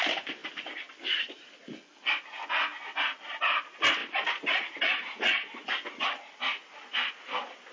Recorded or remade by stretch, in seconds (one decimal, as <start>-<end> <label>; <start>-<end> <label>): 0.0-7.7 recorded